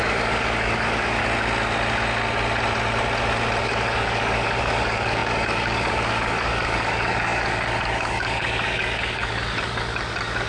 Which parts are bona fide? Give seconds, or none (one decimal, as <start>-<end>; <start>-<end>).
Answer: 1.2-3.6